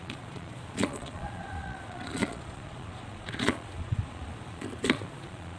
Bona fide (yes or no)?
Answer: no